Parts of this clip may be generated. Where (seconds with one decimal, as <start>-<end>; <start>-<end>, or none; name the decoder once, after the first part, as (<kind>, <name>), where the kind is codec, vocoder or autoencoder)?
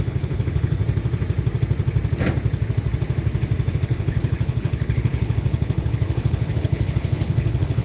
0.0-0.8 (codec, HILCodec); 3.7-7.8